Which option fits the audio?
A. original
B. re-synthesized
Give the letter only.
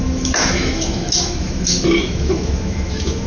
B